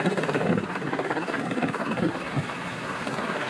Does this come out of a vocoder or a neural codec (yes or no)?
yes